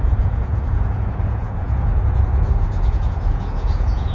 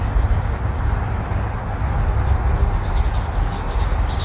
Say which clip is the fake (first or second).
first